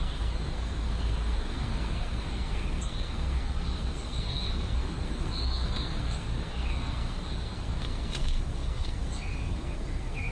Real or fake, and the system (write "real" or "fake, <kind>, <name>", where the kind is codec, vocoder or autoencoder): fake, codec, SNAC